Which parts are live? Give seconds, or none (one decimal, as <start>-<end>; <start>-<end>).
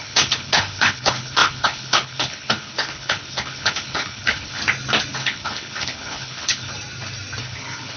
4.6-5.1; 6.7-7.4